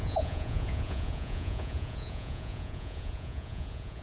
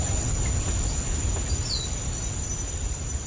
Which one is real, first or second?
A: second